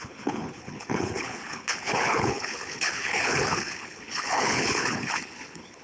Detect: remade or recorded remade